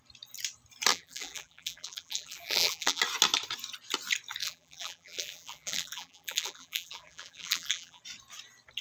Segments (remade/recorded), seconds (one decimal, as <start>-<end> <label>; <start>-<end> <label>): 0.0-0.9 recorded; 0.9-3.0 remade; 3.0-4.4 recorded; 4.4-8.0 remade; 8.0-8.8 recorded